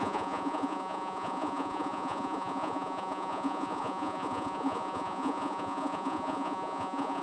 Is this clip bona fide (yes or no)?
no